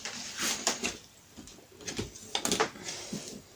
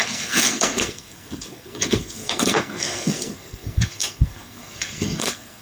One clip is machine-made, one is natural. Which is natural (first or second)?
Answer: first